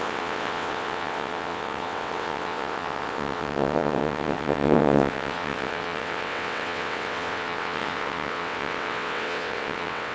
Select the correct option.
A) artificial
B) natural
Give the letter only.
A